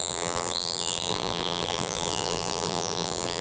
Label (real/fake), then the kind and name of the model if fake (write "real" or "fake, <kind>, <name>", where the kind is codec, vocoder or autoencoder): fake, vocoder, BigVGAN v2